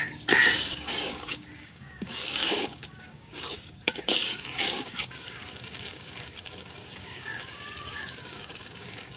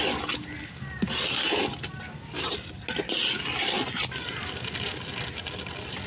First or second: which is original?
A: second